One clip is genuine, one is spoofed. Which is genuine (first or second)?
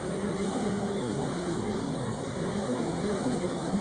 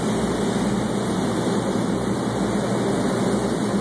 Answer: second